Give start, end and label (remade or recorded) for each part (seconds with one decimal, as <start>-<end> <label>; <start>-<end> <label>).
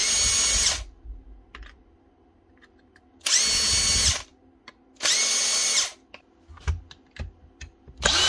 0.0-8.3 recorded